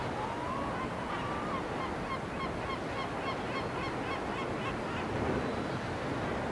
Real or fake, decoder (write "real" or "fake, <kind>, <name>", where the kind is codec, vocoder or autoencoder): real